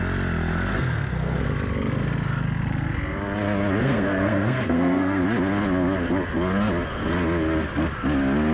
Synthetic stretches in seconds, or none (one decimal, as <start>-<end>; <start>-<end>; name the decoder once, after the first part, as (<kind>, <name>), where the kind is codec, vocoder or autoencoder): 0.7-1.4 (codec, SNAC); 3.8-5.2